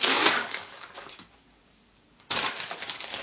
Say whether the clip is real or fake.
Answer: fake